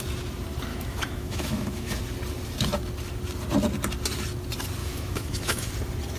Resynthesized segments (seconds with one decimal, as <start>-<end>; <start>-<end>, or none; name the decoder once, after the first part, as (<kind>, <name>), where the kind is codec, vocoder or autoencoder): 0.7-2.0 (autoencoder, DAC-VAE); 4.8-5.7